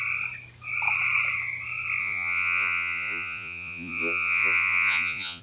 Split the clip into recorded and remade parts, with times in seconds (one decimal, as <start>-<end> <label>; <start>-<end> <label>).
0.0-2.0 recorded; 2.0-5.4 remade